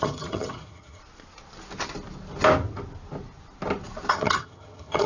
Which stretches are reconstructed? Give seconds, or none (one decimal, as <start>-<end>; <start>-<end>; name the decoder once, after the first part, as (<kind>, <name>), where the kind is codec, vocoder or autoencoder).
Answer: 0.0-1.0 (vocoder, HiFi-GAN); 4.1-5.1